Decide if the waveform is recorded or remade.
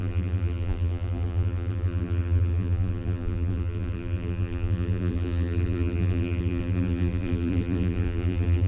remade